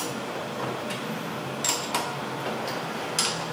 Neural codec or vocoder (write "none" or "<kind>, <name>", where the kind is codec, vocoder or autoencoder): none